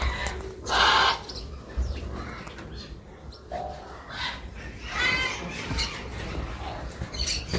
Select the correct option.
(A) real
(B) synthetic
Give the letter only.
A